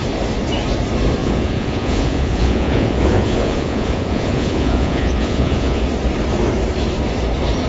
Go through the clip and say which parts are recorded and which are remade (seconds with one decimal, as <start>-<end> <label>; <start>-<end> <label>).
0.0-1.2 recorded; 1.2-5.8 remade; 5.8-7.7 recorded